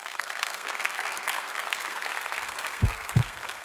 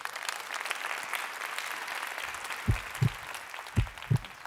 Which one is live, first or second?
second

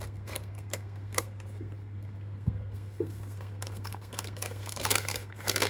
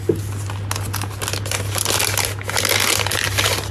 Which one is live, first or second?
second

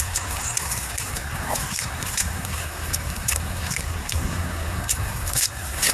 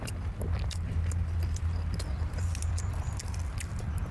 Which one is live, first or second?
second